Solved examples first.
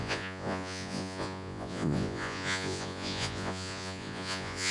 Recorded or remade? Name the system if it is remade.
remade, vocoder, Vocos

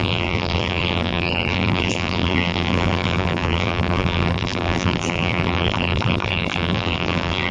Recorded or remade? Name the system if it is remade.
remade, vocoder, BigVGAN v2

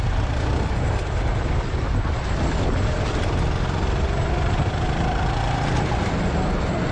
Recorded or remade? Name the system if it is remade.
recorded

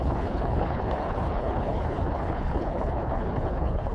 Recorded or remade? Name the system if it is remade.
remade, codec, HILCodec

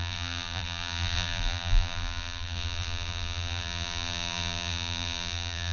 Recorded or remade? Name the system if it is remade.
remade, vocoder, BigVGAN v2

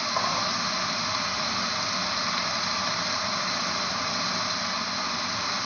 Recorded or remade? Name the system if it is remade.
recorded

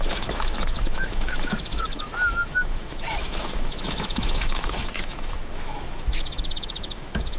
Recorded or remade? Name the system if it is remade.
remade, autoencoder, DAC-VAE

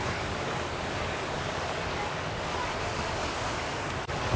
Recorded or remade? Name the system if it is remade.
remade, codec, DAC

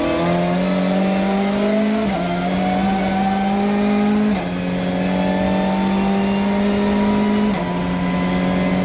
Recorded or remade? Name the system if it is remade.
recorded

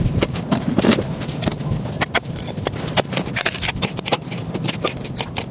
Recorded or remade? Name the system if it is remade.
remade, vocoder, BigVGAN v2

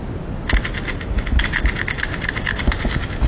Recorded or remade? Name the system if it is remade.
recorded